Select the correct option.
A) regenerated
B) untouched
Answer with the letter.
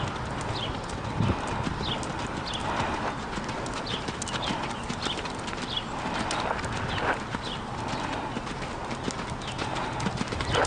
B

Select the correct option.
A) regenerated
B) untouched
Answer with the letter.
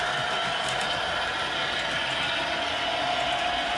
B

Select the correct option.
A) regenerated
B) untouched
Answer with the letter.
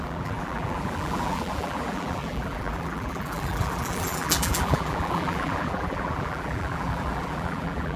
A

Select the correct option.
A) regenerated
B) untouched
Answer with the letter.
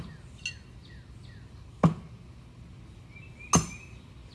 B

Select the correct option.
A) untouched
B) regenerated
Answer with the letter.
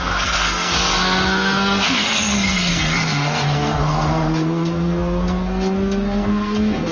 B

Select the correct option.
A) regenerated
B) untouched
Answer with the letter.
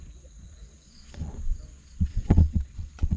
A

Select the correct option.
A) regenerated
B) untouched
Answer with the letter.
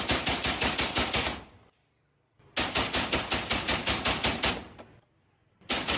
B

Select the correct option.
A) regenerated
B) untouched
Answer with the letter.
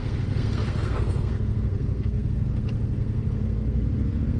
A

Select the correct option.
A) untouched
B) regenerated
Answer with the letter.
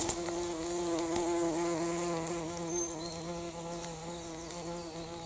A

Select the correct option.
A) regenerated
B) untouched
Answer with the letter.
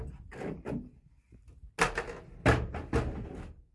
B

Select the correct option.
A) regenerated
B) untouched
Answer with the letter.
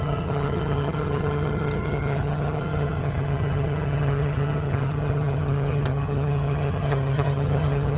A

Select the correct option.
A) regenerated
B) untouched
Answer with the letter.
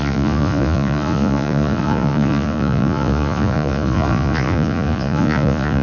A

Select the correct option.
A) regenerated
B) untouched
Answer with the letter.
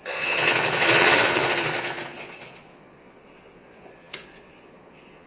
A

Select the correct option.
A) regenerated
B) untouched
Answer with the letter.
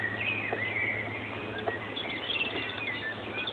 B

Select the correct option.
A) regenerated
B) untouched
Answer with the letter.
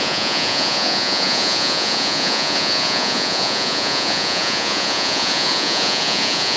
A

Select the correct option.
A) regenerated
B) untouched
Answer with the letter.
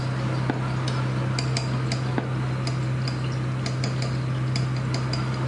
B